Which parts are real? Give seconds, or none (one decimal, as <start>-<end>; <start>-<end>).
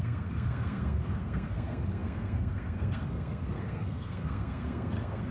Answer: none